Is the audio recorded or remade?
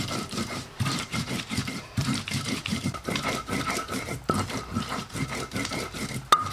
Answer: remade